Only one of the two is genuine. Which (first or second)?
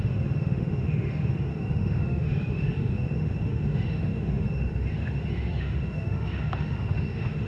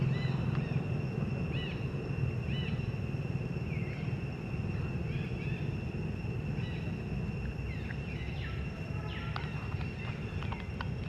second